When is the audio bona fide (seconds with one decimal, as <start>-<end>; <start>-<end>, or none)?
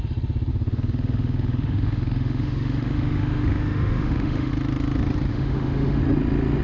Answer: 0.0-0.5; 4.5-5.3; 6.0-6.6